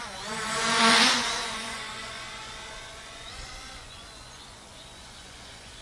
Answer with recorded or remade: remade